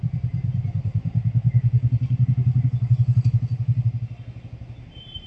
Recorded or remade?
recorded